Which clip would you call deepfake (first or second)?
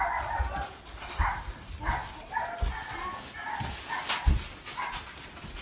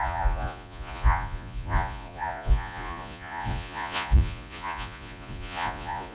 second